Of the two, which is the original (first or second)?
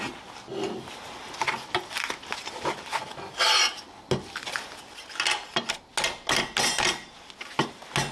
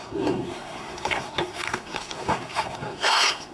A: first